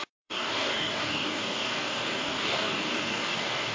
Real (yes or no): no